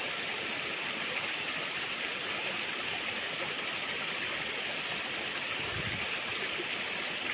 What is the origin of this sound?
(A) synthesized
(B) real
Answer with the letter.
B